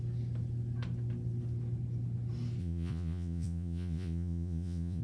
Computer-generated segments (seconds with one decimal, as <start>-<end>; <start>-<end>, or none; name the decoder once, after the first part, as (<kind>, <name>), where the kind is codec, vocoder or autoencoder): 2.6-5.0 (vocoder, Vocos)